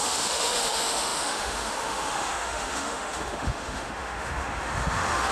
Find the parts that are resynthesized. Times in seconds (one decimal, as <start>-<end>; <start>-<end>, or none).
0.0-5.3